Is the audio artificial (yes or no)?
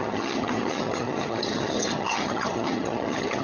yes